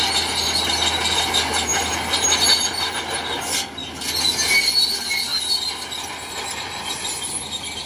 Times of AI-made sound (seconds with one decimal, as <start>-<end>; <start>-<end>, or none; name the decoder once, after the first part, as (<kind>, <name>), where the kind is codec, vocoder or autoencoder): none

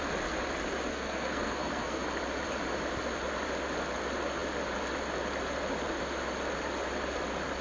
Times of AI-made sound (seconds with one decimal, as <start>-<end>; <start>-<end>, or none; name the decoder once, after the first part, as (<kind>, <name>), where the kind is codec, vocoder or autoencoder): 0.9-2.0 (codec, SNAC)

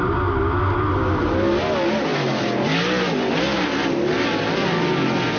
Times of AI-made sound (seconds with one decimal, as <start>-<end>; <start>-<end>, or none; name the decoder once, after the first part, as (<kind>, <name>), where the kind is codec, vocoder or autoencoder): none

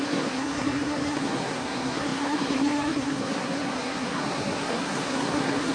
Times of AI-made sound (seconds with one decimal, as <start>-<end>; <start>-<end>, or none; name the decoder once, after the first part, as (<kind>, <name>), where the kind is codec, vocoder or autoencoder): 0.0-5.7 (codec, SNAC)

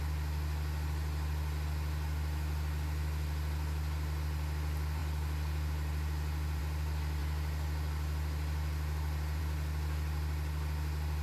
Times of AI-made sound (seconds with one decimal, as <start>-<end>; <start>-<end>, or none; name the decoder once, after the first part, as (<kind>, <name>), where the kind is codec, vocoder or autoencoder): none

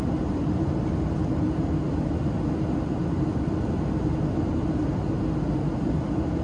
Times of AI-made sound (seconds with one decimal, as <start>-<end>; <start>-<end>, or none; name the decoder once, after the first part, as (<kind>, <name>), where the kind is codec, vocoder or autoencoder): none

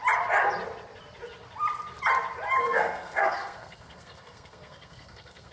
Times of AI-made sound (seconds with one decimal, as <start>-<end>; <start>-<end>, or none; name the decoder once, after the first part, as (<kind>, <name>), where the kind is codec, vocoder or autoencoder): 2.6-5.5 (codec, SNAC)

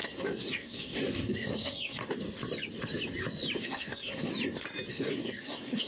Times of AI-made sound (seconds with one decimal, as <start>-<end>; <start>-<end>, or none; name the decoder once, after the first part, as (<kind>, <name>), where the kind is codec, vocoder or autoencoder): 0.0-2.0 (codec, SNAC); 3.6-4.3; 4.9-5.9